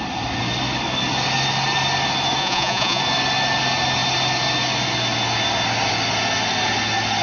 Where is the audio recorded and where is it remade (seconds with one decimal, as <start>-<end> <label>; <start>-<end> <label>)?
0.0-2.4 recorded; 2.4-3.0 remade; 3.0-7.2 recorded